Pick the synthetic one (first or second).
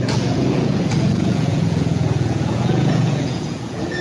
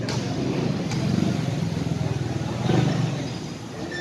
first